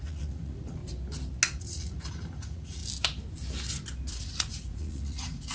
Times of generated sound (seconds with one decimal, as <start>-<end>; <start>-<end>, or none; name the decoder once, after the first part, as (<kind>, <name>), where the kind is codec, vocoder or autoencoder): 0.0-0.8 (vocoder, Vocos); 1.6-2.8; 4.1-5.5